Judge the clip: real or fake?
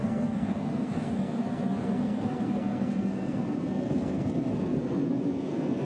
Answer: fake